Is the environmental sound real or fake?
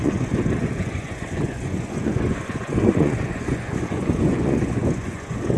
fake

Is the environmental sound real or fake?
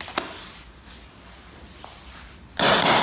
real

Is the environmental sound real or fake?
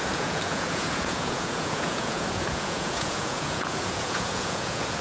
fake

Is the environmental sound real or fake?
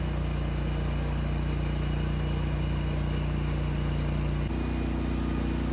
real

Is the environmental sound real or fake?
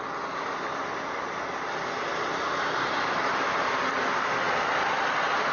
real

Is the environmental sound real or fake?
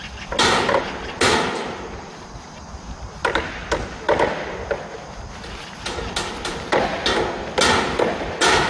real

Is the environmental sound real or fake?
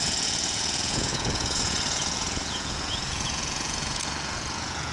fake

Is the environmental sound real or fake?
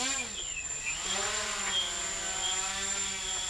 real